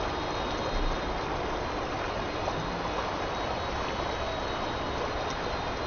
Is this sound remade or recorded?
recorded